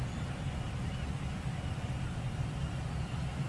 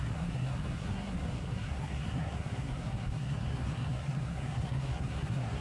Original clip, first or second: first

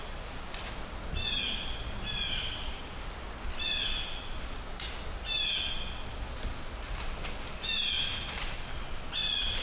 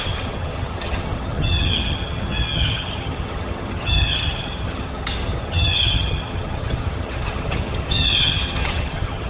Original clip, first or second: first